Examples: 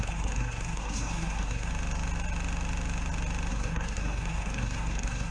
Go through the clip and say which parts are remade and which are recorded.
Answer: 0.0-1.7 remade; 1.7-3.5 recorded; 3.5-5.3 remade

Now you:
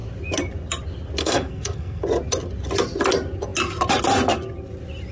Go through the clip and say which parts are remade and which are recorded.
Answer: 0.0-1.2 recorded; 1.2-2.0 remade; 2.0-5.1 recorded

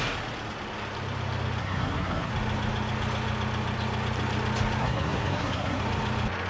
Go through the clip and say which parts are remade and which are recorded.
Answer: 0.0-1.6 recorded; 1.6-2.3 remade; 2.3-4.8 recorded; 4.8-5.8 remade; 5.8-6.5 recorded

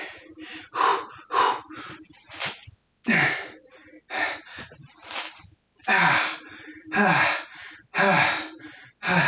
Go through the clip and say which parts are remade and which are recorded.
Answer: 0.0-9.3 recorded

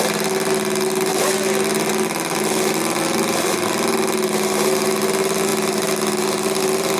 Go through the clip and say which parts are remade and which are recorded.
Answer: 0.0-7.0 recorded